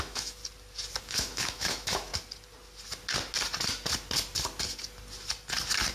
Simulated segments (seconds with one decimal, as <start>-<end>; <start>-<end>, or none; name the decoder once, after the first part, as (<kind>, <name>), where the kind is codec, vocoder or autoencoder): 0.0-0.4 (autoencoder, DAC-VAE); 1.0-2.1